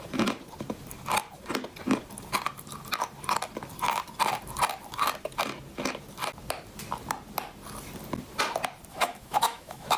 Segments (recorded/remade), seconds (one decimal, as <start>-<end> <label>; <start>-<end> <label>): 0.0-8.9 recorded; 8.9-10.0 remade

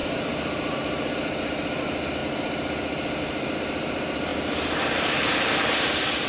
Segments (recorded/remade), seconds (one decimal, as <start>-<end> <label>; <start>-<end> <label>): 0.0-2.2 remade; 2.2-3.2 recorded; 3.2-6.3 remade

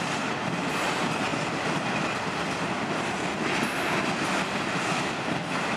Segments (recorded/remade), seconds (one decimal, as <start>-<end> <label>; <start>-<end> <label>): 0.0-5.8 recorded

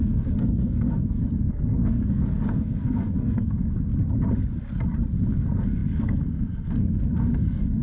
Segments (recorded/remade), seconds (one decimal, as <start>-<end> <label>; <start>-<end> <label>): 0.0-3.9 remade; 3.9-5.2 recorded; 5.2-7.8 remade

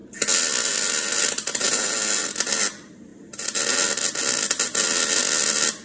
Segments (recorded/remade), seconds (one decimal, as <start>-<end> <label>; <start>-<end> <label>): 0.0-5.8 recorded

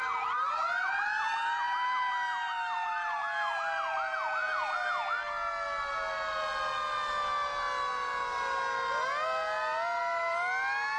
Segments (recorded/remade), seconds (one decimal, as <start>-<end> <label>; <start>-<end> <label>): 0.0-11.0 recorded

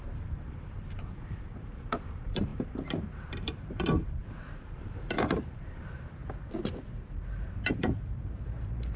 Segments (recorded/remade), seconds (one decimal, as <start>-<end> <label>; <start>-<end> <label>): 0.0-6.2 remade; 6.2-7.3 recorded; 7.3-9.0 remade